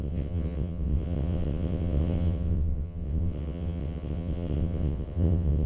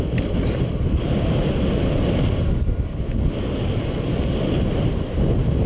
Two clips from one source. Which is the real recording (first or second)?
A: second